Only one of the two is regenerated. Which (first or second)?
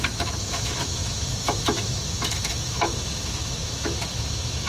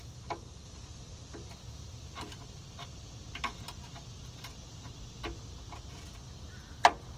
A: first